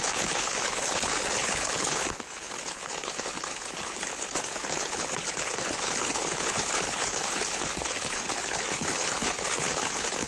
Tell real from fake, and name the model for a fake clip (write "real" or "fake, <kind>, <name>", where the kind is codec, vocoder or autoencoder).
fake, codec, HILCodec